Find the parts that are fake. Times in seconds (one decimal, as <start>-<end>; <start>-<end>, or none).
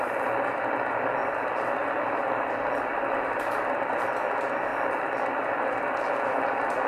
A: 1.2-4.1; 4.7-6.1